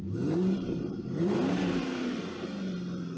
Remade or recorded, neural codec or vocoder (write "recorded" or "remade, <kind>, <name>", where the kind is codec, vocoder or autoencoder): remade, vocoder, BigVGAN v2